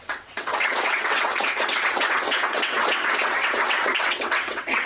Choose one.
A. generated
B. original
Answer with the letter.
A